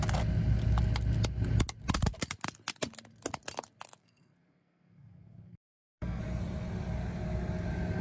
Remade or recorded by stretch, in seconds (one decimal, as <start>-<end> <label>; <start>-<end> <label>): 0.0-4.0 recorded; 4.0-6.2 remade; 6.2-8.0 recorded